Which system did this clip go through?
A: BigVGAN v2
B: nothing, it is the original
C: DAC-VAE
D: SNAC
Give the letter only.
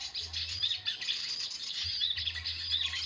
B